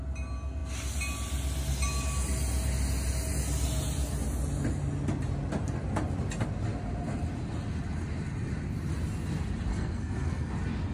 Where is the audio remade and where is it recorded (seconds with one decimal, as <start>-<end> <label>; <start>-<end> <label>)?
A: 0.0-9.7 recorded; 9.7-10.5 remade; 10.5-10.9 recorded